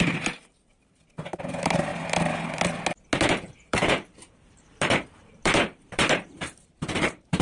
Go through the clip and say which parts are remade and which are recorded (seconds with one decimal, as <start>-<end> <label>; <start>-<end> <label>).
0.0-1.9 remade; 1.9-3.3 recorded; 3.3-7.4 remade